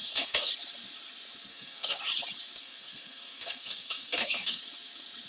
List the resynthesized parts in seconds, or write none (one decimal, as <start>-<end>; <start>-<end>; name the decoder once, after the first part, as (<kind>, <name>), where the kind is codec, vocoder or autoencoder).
0.0-0.5 (codec, SNAC); 1.5-2.0; 2.6-4.6